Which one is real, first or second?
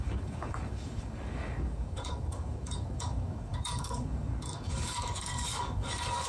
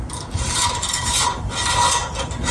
second